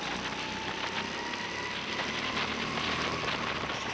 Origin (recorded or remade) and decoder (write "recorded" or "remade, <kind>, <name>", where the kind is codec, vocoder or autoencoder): recorded